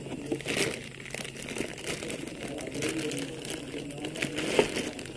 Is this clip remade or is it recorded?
recorded